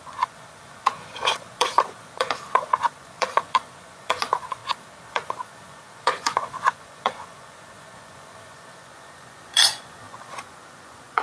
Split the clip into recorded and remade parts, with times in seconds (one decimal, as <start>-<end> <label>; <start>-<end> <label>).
0.0-4.6 remade; 4.6-5.1 recorded; 5.1-11.2 remade